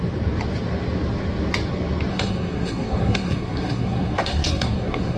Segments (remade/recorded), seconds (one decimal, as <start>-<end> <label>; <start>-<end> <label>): 0.0-2.1 recorded; 2.1-5.2 remade